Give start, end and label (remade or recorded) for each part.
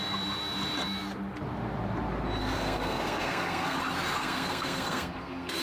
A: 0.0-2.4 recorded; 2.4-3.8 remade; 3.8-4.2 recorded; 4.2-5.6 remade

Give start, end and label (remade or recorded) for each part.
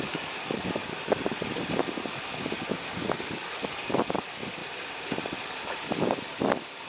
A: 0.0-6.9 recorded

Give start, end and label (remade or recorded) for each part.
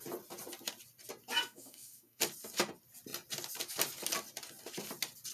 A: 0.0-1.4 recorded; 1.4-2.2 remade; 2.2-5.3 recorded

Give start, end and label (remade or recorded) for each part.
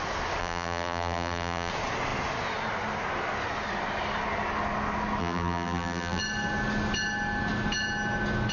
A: 0.0-0.4 recorded; 0.4-1.7 remade; 1.7-5.2 recorded; 5.2-6.2 remade; 6.2-8.5 recorded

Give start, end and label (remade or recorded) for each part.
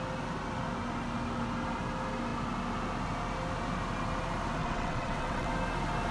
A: 0.0-4.6 recorded; 4.6-5.5 remade; 5.5-6.1 recorded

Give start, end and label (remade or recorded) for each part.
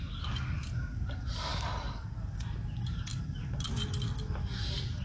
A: 0.0-5.0 recorded